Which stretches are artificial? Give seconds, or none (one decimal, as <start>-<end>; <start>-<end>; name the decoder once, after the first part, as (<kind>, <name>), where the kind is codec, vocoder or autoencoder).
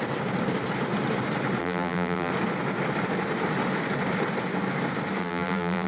1.6-2.3 (vocoder, BigVGAN v2); 5.2-5.9